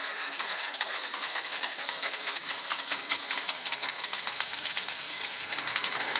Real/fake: fake